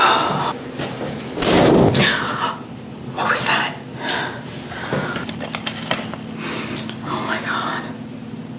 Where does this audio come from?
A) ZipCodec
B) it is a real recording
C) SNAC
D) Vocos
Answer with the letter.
B